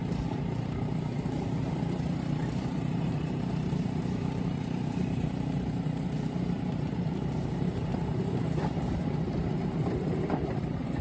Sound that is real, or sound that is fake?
fake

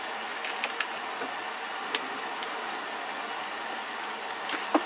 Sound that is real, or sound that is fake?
real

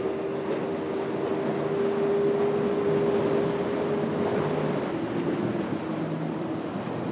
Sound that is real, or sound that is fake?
real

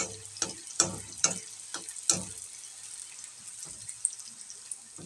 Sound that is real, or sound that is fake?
real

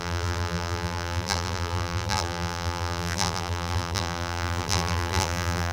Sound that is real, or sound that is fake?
fake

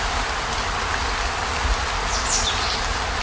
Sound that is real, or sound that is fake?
real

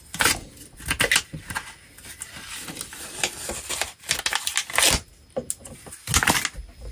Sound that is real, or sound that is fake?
real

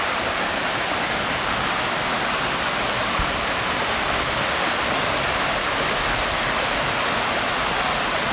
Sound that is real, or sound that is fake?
real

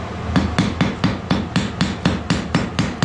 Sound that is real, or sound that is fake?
real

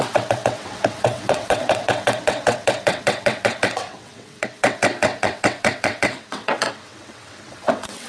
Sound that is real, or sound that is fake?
fake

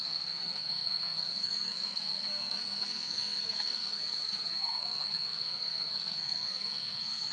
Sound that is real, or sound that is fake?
fake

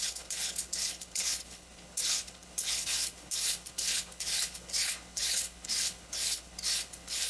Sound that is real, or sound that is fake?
fake